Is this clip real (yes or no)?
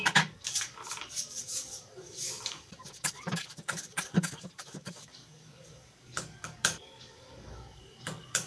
no